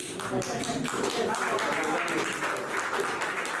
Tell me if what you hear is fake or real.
real